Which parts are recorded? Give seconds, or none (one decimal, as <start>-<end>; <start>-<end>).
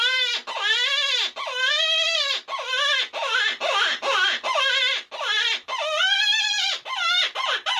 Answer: 0.0-7.8